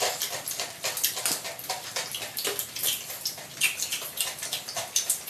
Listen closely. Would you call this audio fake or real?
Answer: real